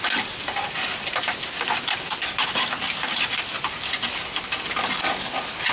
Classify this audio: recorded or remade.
recorded